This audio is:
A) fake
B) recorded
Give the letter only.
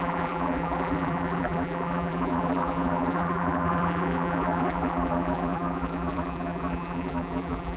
A